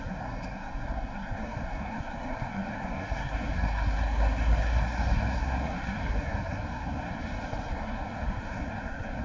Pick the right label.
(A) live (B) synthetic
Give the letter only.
B